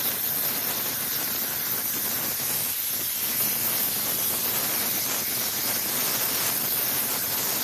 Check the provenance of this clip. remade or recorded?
recorded